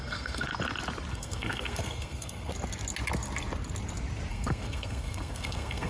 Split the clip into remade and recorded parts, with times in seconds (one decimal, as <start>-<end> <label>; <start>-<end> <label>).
0.0-0.5 remade; 0.5-1.1 recorded; 1.1-2.5 remade; 2.5-4.3 recorded; 4.3-5.9 remade